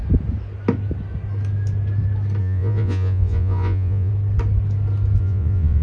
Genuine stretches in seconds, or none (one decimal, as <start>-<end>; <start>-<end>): 0.0-2.4; 4.1-5.2